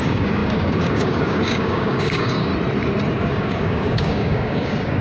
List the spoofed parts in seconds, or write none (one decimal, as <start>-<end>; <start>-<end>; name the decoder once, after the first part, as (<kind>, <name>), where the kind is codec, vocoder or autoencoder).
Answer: 0.0-2.5 (codec, DAC); 3.1-5.0